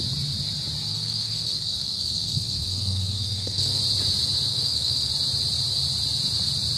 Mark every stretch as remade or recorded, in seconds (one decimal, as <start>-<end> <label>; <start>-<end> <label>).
0.0-0.9 recorded; 0.9-3.8 remade; 3.8-4.5 recorded; 4.5-5.1 remade; 5.1-6.8 recorded